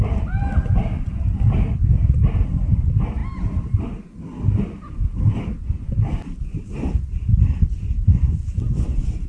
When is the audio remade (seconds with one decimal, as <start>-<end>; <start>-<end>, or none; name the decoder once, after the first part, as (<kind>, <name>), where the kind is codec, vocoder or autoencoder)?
none